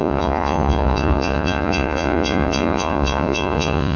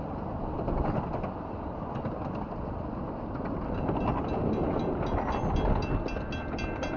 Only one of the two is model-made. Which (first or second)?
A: first